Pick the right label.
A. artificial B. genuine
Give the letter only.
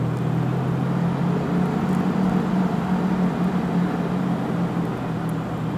B